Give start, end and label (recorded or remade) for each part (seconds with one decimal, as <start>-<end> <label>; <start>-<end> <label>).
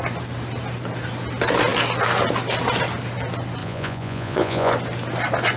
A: 0.0-3.6 recorded; 3.6-4.7 remade; 4.7-5.6 recorded